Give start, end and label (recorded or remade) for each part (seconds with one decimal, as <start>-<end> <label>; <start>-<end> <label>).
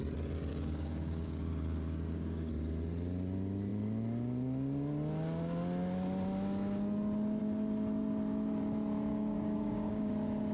0.0-0.5 recorded; 0.5-2.5 remade; 2.5-9.1 recorded; 9.1-10.1 remade; 10.1-10.5 recorded